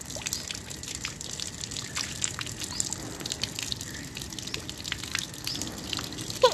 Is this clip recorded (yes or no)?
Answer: yes